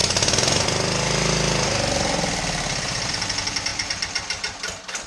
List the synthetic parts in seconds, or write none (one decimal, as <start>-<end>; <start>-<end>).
3.7-4.4